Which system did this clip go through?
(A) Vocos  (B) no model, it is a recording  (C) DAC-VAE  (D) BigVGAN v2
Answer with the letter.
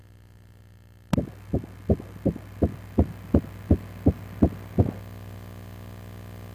B